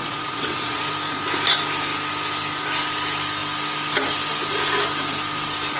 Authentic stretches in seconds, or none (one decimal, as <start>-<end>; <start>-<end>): 0.8-5.8